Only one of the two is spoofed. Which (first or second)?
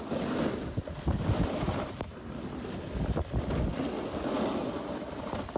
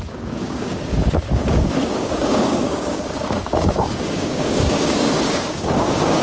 second